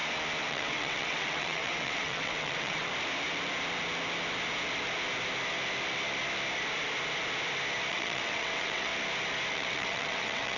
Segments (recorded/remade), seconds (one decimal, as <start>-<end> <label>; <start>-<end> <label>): 0.0-0.5 recorded; 0.5-2.9 remade; 2.9-7.9 recorded; 7.9-8.9 remade; 8.9-9.5 recorded; 9.5-10.6 remade